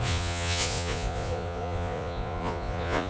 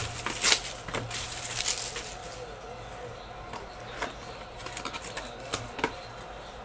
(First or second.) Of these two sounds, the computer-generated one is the first